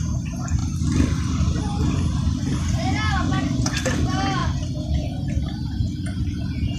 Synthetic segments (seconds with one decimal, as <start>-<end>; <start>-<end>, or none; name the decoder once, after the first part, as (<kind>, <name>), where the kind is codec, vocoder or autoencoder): none

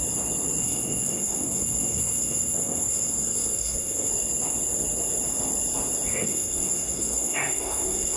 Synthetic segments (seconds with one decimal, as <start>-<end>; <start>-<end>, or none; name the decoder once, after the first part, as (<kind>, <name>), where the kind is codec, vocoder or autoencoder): 0.6-4.1 (codec, SNAC); 6.1-8.2